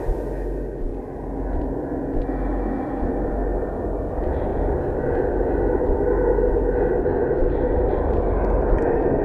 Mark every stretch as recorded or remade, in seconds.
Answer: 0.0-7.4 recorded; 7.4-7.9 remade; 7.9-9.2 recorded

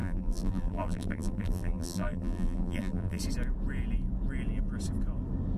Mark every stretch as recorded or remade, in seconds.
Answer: 0.0-3.2 remade; 3.2-5.6 recorded

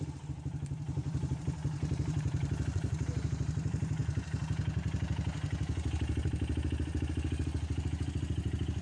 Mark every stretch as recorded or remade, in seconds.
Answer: 0.0-4.0 remade; 4.0-8.8 recorded

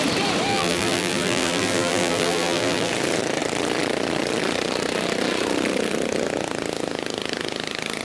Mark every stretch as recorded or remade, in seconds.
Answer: 0.0-0.5 recorded; 0.5-2.9 remade; 2.9-8.0 recorded

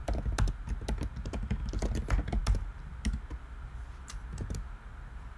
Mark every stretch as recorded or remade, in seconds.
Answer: 0.0-5.4 recorded

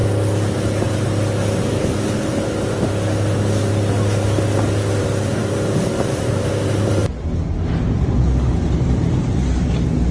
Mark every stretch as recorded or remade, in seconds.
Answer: 0.0-5.4 recorded; 5.4-6.5 remade; 6.5-10.1 recorded

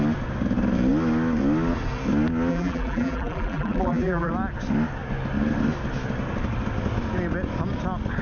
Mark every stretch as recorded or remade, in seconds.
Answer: 0.0-2.5 recorded; 2.5-4.3 remade; 4.3-8.2 recorded